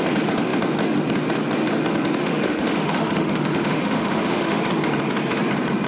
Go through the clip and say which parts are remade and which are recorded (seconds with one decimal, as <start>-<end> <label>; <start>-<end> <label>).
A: 0.0-2.2 recorded; 2.2-4.6 remade; 4.6-5.9 recorded